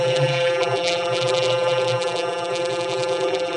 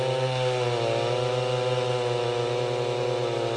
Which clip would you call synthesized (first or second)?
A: first